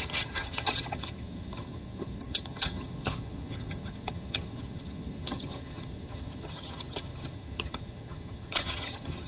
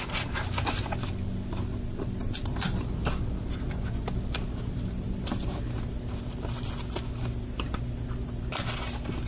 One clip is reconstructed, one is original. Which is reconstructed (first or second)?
first